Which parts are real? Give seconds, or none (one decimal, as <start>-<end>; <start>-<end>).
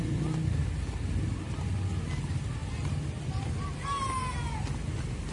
0.0-5.3